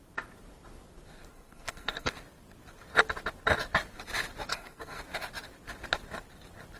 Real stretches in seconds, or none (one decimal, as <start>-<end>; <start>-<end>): 0.0-1.3; 2.1-4.5; 5.0-6.8